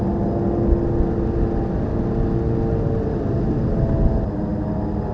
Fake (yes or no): no